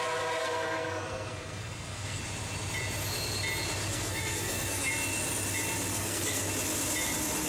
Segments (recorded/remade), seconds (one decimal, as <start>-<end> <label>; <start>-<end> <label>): 0.0-0.4 recorded; 0.4-2.2 remade; 2.2-3.9 recorded; 3.9-4.9 remade; 4.9-5.9 recorded; 5.9-6.5 remade; 6.5-7.5 recorded